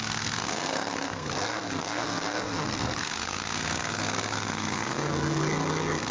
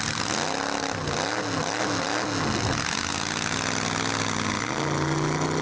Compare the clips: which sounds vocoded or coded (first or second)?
first